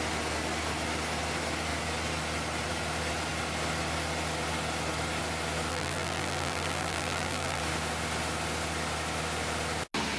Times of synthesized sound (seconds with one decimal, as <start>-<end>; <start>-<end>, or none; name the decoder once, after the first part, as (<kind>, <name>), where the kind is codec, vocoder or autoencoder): 5.7-7.6 (vocoder, BigVGAN v2)